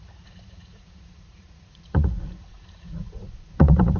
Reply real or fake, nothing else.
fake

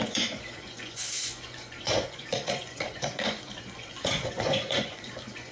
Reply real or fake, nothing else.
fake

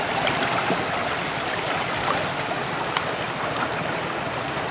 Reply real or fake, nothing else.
real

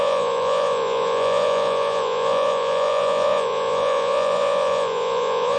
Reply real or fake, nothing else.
fake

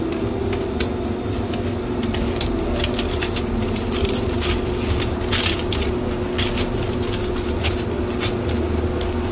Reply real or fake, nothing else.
real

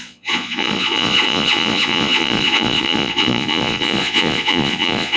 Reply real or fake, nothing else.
fake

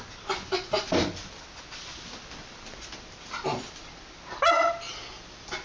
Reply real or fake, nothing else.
real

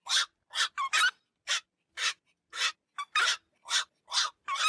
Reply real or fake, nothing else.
real